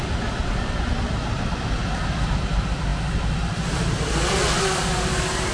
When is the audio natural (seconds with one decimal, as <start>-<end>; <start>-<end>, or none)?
0.0-5.5